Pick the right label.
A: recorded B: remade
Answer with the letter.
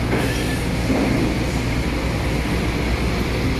A